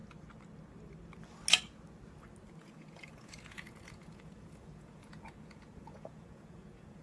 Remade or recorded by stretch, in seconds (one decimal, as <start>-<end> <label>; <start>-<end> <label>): 0.0-2.6 recorded; 2.6-7.0 remade